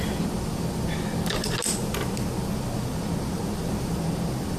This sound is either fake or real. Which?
real